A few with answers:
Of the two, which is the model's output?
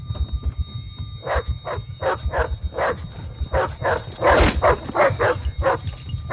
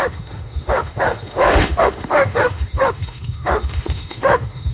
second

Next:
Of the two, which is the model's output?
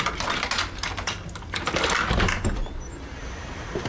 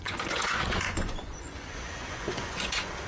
second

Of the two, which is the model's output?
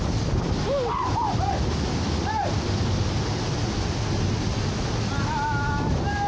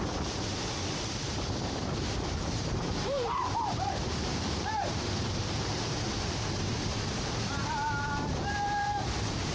second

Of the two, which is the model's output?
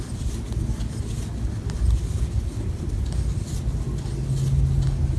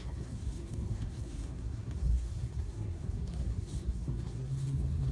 second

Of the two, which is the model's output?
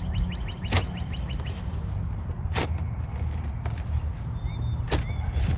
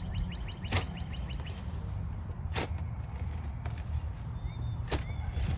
second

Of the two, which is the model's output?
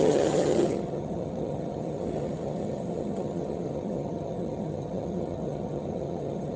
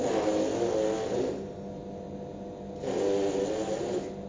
first